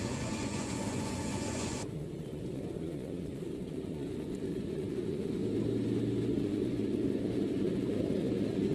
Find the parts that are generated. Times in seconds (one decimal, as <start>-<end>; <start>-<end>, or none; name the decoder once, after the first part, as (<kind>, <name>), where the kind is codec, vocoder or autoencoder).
0.0-5.4 (vocoder, Vocos); 6.3-8.7